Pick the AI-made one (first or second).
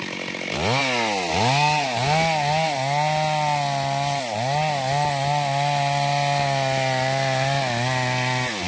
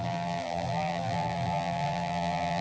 second